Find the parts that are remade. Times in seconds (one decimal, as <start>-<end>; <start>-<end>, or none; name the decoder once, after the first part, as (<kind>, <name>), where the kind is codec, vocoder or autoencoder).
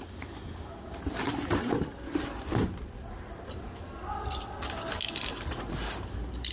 none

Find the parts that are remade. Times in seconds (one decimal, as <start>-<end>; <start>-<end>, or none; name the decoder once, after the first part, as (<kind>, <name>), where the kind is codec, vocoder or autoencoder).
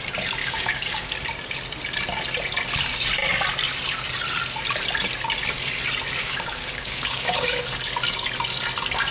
0.4-1.1 (codec, DAC); 6.2-7.6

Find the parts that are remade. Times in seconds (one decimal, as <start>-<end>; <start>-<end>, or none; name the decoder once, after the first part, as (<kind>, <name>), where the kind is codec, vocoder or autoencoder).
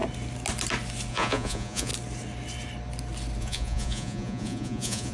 1.1-1.9 (vocoder, Vocos); 3.4-5.1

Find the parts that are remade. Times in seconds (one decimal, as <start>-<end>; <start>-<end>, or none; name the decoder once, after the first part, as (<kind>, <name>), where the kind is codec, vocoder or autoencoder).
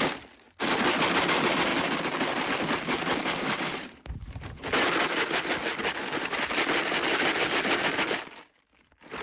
3.4-4.1 (vocoder, BigVGAN v2)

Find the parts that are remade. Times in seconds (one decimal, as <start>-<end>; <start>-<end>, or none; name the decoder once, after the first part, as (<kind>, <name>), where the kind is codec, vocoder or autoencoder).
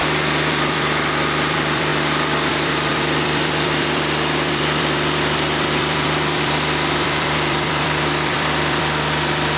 0.0-1.9 (vocoder, BigVGAN v2); 2.5-9.6